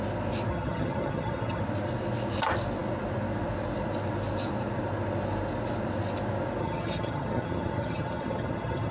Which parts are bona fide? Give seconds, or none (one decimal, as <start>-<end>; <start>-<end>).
0.0-0.5; 1.6-6.6